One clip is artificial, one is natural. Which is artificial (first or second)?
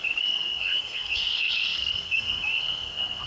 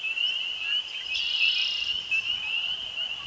first